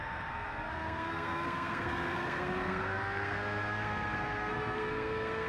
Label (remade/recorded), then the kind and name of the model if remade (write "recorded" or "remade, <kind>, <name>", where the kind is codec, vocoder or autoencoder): remade, codec, SNAC